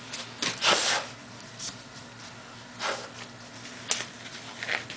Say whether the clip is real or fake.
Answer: real